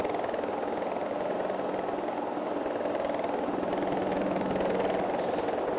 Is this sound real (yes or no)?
yes